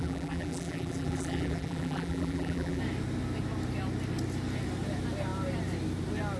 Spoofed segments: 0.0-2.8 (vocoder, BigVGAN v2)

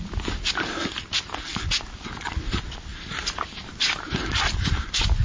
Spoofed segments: 2.9-4.2 (vocoder, BigVGAN v2)

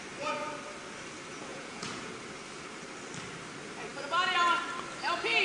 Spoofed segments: 1.5-2.1 (vocoder, Vocos)

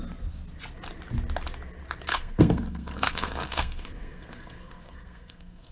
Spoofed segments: 2.1-5.7 (codec, SNAC)